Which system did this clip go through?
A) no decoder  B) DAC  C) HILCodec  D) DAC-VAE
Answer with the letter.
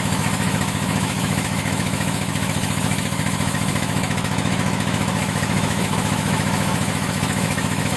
D